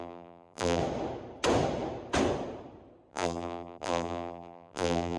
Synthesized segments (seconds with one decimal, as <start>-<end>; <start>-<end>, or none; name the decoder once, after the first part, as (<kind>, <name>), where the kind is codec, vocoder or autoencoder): 0.0-0.8 (vocoder, BigVGAN v2); 3.1-5.2